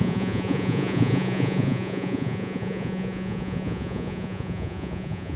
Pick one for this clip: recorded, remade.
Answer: remade